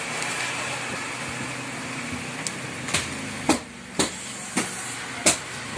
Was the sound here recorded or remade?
recorded